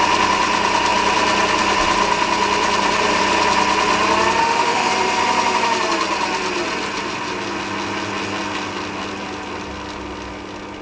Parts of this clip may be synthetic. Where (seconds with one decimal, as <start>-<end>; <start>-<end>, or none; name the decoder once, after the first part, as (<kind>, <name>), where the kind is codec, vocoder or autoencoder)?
4.4-4.9 (autoencoder, DAC-VAE)